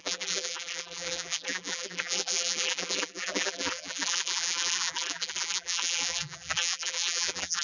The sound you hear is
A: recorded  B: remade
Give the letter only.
B